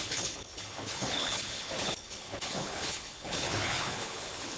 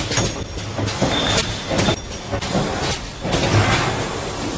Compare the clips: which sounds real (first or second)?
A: second